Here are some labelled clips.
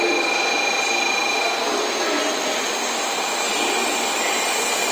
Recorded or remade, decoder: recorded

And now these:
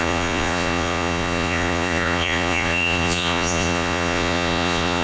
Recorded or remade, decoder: remade, vocoder, Vocos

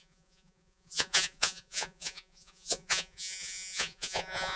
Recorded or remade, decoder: remade, vocoder, Vocos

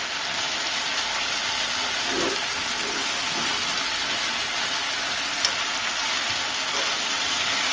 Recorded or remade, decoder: recorded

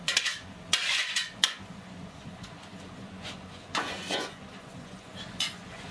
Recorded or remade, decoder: remade, vocoder, Vocos